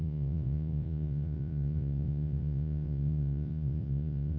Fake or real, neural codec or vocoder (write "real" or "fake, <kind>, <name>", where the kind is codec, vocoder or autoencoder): fake, vocoder, Vocos